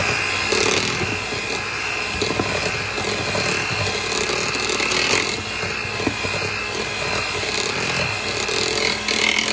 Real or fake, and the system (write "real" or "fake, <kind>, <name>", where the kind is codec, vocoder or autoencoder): real